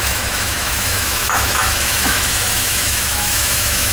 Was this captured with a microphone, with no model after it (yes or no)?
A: no